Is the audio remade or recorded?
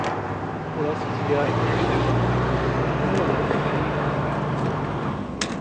recorded